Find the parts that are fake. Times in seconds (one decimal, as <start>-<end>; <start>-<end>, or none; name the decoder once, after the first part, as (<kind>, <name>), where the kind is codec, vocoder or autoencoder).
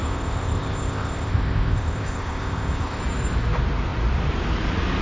0.0-3.0 (codec, ZipCodec)